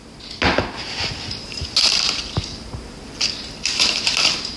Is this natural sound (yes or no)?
yes